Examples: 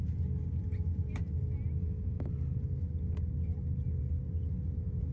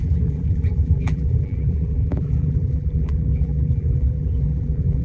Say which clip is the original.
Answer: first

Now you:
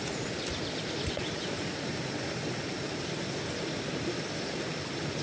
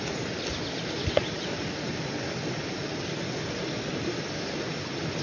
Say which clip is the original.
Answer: second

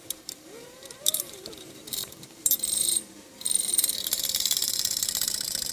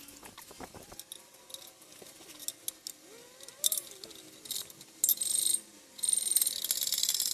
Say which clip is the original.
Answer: second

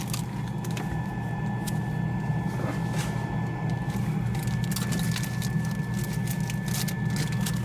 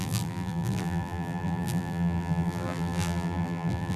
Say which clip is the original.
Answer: first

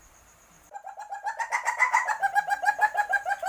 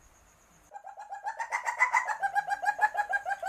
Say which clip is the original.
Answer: second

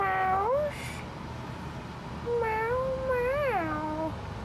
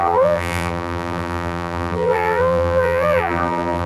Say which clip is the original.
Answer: first